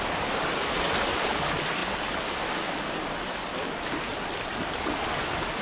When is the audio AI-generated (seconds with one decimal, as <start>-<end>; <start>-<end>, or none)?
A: none